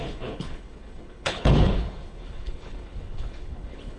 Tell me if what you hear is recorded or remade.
remade